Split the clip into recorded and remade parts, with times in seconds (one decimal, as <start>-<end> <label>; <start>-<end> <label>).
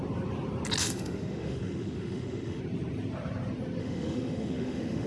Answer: 0.0-0.8 recorded; 0.8-2.6 remade; 2.6-3.8 recorded; 3.8-5.1 remade